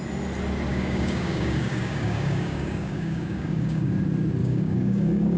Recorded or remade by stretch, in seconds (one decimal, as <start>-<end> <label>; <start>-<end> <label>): 0.0-0.7 recorded; 0.7-3.9 remade; 3.9-4.4 recorded; 4.4-5.4 remade